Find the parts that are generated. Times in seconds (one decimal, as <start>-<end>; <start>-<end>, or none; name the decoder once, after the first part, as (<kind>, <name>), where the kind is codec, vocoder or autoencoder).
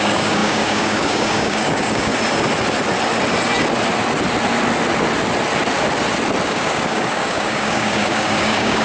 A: 0.0-2.1 (codec, DAC); 6.5-8.8